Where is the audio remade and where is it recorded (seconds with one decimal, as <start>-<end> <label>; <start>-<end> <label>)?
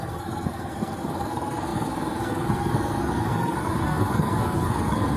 0.0-5.2 remade